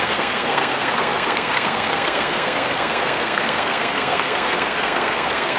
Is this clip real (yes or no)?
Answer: no